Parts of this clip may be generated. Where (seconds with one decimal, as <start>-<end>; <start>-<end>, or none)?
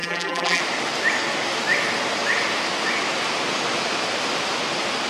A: 0.0-0.6